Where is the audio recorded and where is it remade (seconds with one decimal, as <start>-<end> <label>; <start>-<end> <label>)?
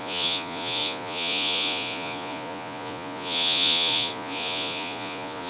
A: 0.0-5.5 remade